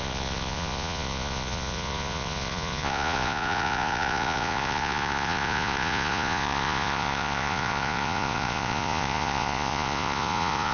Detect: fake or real fake